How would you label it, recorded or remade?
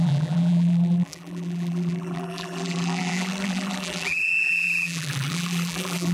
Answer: remade